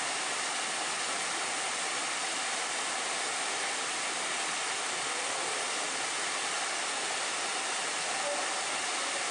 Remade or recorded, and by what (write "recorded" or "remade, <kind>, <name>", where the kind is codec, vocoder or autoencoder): recorded